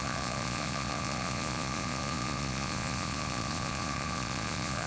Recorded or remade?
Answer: remade